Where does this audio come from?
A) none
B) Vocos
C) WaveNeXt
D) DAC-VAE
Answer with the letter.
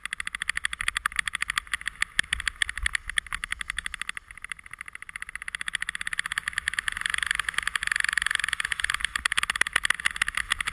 A